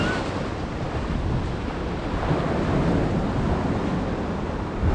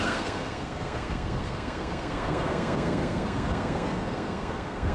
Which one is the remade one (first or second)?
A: second